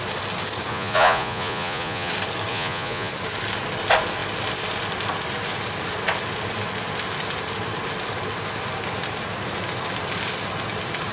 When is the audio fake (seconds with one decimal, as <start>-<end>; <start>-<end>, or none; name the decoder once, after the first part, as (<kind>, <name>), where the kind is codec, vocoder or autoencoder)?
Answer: 0.7-2.1 (vocoder, Vocos); 2.5-3.1